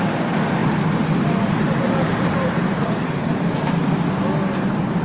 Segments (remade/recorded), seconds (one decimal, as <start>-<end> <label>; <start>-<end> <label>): 0.0-0.6 recorded; 0.6-3.6 remade; 3.6-5.0 recorded